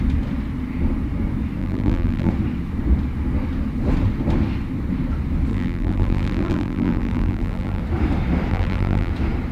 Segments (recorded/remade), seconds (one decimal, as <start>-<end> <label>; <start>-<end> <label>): 0.0-1.6 recorded; 1.6-2.3 remade; 2.3-5.5 recorded; 5.5-7.8 remade; 7.8-8.5 recorded; 8.5-9.1 remade; 9.1-9.5 recorded